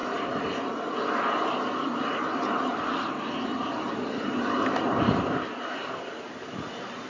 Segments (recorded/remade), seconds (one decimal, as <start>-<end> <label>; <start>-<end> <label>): 0.0-7.1 recorded